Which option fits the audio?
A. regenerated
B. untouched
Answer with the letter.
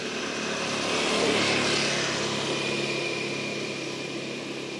B